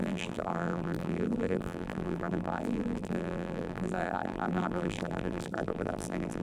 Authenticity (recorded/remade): remade